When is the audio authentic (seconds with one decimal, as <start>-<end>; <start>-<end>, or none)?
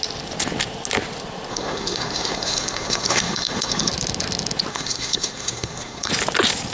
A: 0.0-1.5; 3.9-4.7; 6.1-6.7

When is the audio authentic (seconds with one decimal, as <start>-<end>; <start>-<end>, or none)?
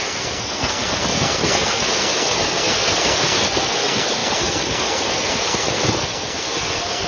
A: none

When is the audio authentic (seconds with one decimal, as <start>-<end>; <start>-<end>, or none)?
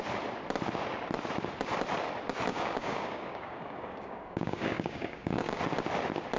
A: 0.0-2.5; 5.6-6.4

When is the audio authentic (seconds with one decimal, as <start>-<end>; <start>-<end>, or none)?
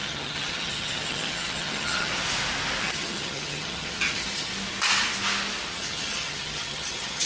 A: 2.1-2.8; 4.5-5.7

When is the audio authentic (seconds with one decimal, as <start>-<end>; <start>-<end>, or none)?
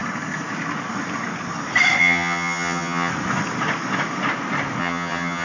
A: 0.0-2.0; 3.1-4.8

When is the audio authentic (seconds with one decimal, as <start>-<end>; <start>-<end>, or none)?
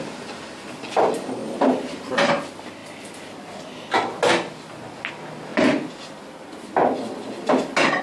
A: 0.0-1.4; 2.3-8.0